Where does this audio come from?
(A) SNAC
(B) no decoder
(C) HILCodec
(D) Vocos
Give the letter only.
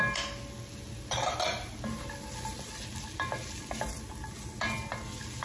B